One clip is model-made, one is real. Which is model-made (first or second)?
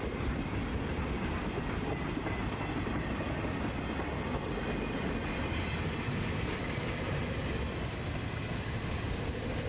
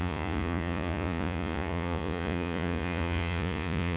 second